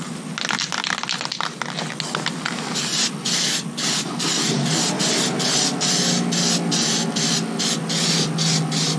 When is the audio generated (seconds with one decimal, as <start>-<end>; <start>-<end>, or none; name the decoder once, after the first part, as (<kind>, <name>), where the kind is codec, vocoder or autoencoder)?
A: none